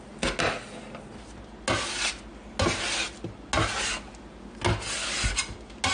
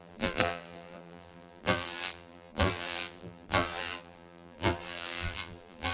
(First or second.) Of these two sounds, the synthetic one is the second